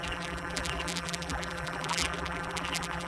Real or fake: fake